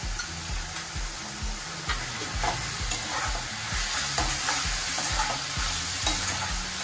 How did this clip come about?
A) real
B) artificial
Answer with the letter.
A